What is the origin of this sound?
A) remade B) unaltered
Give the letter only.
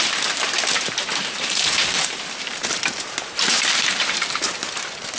A